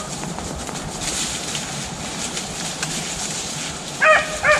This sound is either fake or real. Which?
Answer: real